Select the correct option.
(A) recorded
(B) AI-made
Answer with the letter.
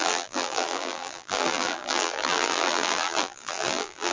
B